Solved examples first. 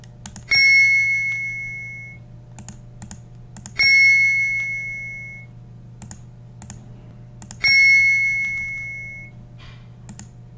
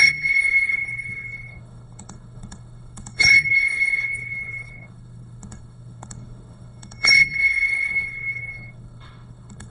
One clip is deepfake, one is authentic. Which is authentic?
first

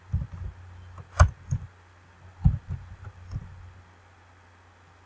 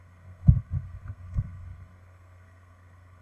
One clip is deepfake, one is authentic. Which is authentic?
first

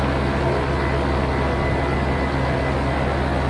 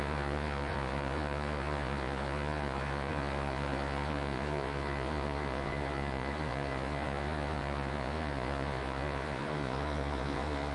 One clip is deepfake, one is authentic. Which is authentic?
first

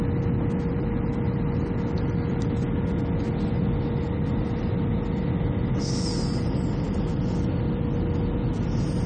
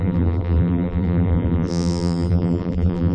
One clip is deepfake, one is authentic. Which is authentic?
first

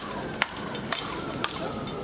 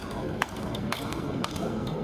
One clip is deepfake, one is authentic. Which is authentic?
first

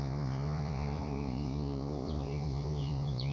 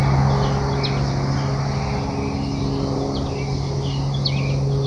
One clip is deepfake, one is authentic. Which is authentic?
second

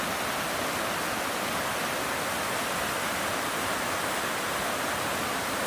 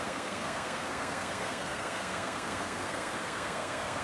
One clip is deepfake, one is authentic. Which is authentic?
first